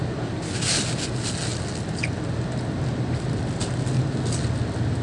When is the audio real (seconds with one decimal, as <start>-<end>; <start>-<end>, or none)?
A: 0.0-5.0

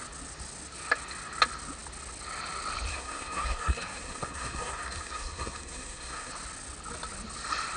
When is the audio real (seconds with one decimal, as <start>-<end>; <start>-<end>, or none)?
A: 0.0-2.9; 6.3-7.8

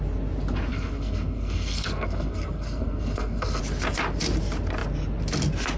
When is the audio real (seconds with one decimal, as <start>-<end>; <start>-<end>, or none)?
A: 0.0-0.7; 3.6-5.8

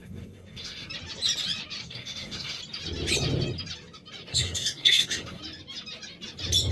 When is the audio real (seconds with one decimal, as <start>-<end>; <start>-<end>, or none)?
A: 0.9-1.8; 2.6-4.3; 5.4-6.7

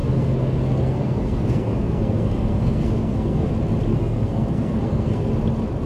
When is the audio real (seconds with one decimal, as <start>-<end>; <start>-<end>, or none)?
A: 3.5-3.9; 5.3-5.9

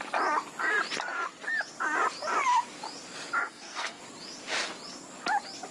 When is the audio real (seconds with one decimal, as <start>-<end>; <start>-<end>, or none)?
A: 0.0-3.4; 4.0-5.7